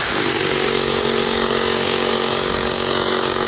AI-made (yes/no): yes